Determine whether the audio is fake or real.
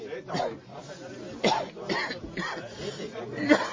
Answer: real